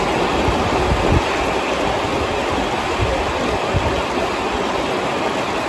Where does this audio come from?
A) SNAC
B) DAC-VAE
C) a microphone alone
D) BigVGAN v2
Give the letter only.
C